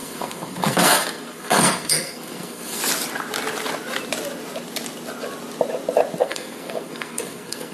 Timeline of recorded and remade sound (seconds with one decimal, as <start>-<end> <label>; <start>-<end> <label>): 0.0-2.8 remade; 2.8-6.2 recorded; 6.2-7.7 remade